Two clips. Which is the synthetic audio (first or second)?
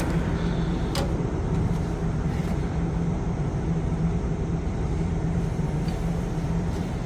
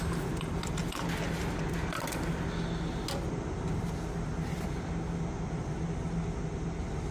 first